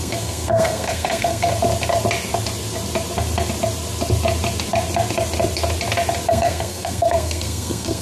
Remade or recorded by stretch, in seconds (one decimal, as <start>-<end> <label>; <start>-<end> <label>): 0.0-1.5 remade; 1.5-6.3 recorded; 6.3-8.0 remade